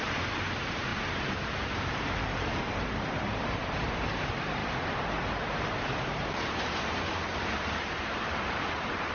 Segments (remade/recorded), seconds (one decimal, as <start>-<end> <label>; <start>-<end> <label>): 0.0-4.6 remade; 4.6-5.5 recorded; 5.5-9.1 remade

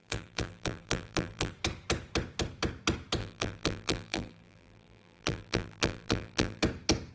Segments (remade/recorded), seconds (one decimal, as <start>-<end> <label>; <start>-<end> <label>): 0.0-1.5 remade; 1.5-3.2 recorded; 3.2-6.6 remade; 6.6-7.1 recorded